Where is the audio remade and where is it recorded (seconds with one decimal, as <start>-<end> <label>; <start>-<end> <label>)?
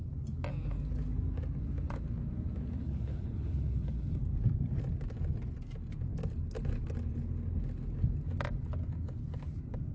0.0-2.8 recorded; 2.8-4.2 remade; 4.2-9.9 recorded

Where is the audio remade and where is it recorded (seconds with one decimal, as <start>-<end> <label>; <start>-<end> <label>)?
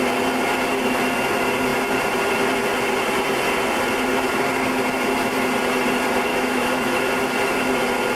0.0-6.3 recorded; 6.3-7.1 remade; 7.1-8.1 recorded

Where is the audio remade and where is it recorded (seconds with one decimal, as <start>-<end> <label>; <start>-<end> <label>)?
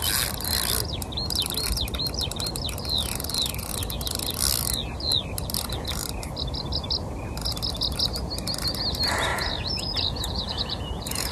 0.0-9.3 recorded; 9.3-11.3 remade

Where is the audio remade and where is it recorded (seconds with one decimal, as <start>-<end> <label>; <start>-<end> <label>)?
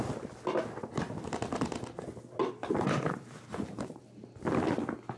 0.0-2.4 recorded; 2.4-4.0 remade; 4.0-5.2 recorded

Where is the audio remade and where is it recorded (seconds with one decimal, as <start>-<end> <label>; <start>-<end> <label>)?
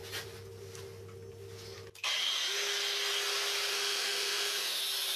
0.0-3.7 recorded; 3.7-4.8 remade; 4.8-5.2 recorded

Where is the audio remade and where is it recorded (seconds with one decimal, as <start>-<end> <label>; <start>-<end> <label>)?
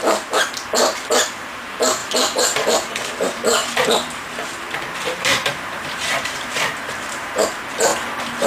0.0-7.9 remade; 7.9-8.5 recorded